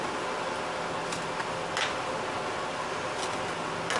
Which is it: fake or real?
real